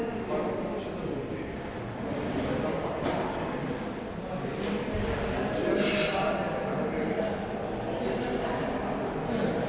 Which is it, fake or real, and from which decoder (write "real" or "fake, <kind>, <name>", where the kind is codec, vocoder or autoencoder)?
real